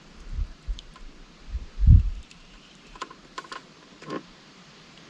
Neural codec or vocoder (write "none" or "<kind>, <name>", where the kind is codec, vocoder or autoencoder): vocoder, BigVGAN v2